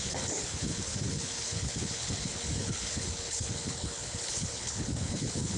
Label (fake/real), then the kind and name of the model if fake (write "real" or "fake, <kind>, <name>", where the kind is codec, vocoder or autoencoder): fake, codec, HILCodec